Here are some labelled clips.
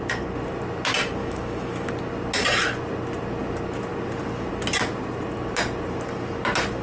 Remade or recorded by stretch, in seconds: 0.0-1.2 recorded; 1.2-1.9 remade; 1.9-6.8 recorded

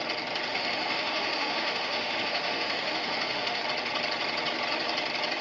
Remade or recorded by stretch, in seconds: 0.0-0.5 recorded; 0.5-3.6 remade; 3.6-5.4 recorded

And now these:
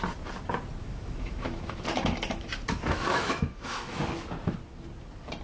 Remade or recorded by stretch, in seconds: 0.0-0.8 recorded; 0.8-4.0 remade; 4.0-5.4 recorded

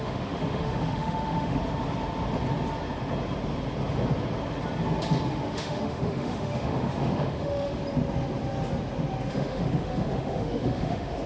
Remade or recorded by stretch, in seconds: 0.0-1.6 remade; 1.6-5.3 recorded; 5.3-7.8 remade; 7.8-9.3 recorded; 9.3-11.3 remade